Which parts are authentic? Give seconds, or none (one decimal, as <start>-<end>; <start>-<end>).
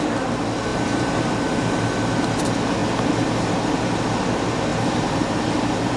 0.0-0.7; 1.2-4.7